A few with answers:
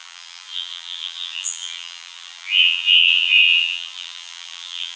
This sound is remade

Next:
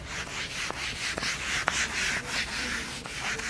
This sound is recorded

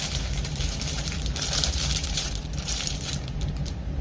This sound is remade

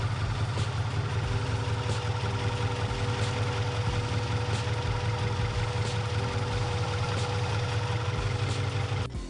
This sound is recorded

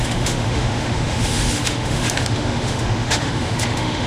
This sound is remade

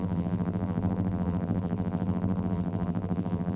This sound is remade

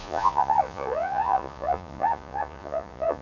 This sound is remade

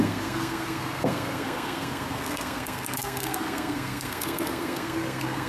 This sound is remade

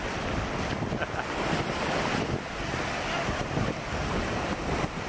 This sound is remade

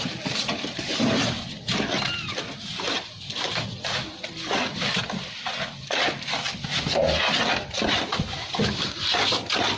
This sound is recorded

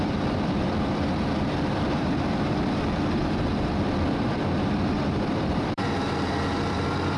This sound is remade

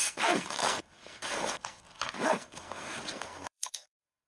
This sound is remade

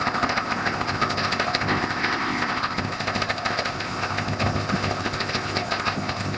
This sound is remade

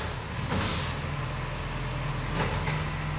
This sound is recorded